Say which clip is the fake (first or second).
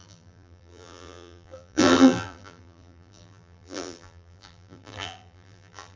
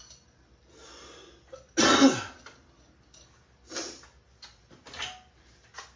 first